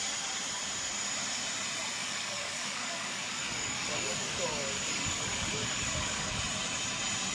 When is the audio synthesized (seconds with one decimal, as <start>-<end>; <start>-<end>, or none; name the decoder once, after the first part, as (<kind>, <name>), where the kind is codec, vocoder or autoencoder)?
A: 2.0-6.4 (codec, DAC)